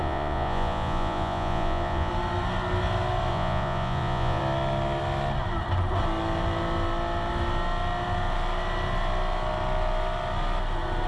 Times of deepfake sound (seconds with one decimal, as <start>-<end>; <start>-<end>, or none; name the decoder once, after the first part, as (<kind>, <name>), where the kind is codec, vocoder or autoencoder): 0.0-2.1 (vocoder, Vocos); 3.3-4.4